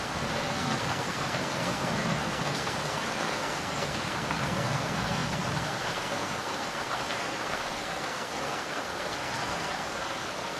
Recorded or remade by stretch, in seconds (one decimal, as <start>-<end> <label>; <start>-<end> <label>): 0.0-10.6 remade